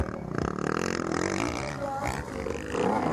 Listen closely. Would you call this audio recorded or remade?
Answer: recorded